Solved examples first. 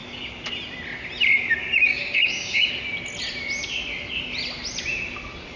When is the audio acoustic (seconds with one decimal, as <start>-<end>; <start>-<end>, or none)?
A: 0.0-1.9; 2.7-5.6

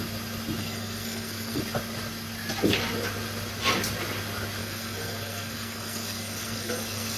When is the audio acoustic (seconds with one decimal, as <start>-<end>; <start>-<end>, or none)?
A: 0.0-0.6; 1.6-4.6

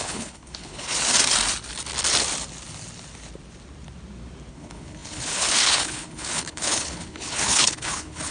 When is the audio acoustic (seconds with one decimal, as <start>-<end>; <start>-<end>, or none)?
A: 0.9-4.5

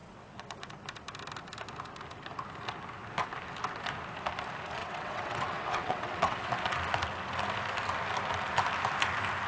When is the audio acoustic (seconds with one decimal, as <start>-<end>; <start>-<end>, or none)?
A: 0.7-4.8; 6.5-9.5

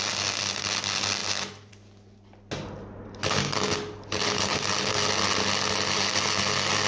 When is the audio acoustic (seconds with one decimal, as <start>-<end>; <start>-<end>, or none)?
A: 0.0-6.9

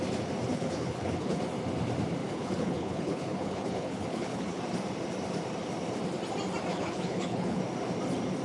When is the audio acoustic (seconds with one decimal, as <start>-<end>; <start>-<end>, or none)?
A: 0.0-0.5; 1.4-2.2; 4.6-6.7; 7.6-8.4